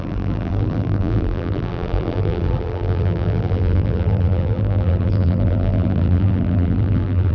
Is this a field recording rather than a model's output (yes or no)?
no